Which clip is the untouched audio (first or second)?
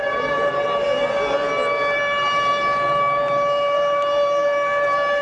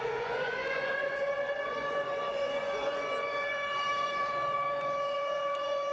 first